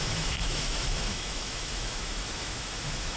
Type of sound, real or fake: fake